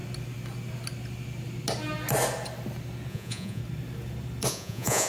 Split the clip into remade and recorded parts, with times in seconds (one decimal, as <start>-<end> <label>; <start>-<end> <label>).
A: 0.0-3.1 recorded; 3.1-3.6 remade; 3.6-4.5 recorded; 4.5-5.1 remade